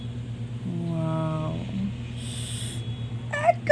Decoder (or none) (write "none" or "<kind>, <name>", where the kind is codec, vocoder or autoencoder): none